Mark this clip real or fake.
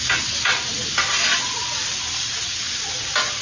real